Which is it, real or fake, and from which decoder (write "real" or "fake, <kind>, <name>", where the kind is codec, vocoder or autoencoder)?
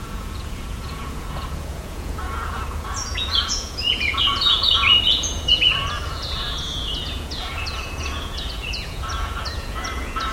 fake, vocoder, Vocos